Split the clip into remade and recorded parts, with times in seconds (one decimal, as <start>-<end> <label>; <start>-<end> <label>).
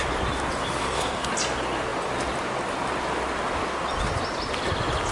0.0-0.8 recorded; 0.8-1.3 remade; 1.3-5.1 recorded